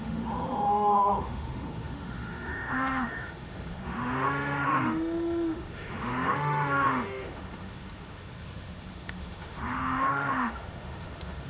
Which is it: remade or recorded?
remade